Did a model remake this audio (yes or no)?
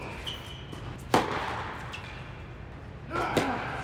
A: no